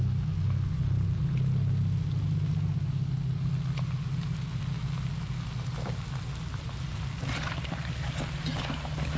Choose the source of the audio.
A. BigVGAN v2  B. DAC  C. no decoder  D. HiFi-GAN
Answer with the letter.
C